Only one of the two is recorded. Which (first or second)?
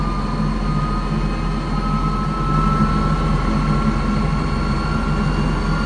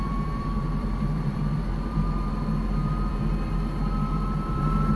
first